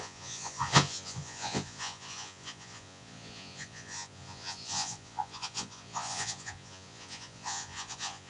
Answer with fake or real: fake